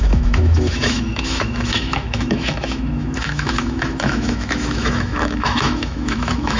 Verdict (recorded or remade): remade